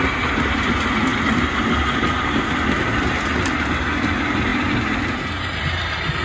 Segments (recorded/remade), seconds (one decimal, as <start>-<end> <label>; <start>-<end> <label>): 0.0-6.2 recorded